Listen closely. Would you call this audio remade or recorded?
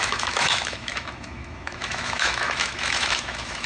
remade